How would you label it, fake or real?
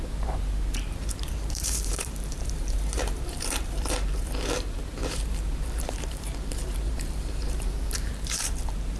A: fake